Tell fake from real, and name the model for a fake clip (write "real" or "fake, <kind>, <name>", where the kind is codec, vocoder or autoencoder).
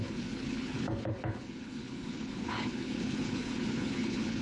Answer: fake, codec, HILCodec